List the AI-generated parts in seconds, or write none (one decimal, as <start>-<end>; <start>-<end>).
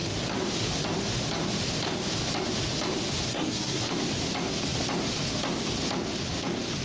3.3-3.9